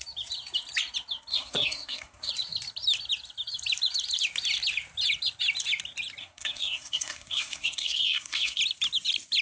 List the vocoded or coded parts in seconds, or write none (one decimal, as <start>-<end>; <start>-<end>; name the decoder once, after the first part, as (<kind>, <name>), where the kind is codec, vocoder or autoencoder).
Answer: 1.3-2.3 (codec, SNAC); 6.2-8.6